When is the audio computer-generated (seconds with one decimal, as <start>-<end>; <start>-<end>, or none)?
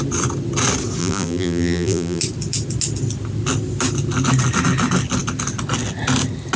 1.0-2.2